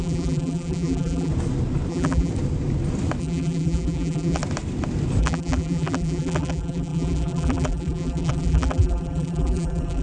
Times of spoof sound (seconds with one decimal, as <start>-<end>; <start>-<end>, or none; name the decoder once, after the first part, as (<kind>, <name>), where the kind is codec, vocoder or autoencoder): 0.0-1.3 (vocoder, BigVGAN v2); 1.9-2.3; 3.2-4.4; 5.2-10.0